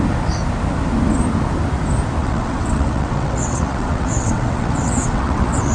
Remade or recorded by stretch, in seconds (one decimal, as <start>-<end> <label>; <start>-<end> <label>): 0.0-2.2 recorded; 2.2-5.7 remade